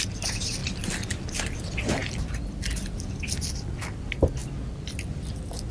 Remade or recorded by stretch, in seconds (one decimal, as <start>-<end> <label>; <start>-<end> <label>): 0.0-5.7 recorded